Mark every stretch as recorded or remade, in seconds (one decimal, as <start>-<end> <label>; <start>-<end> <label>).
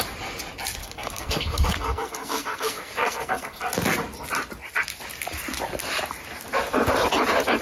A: 0.0-0.8 recorded; 0.8-3.6 remade; 3.6-7.6 recorded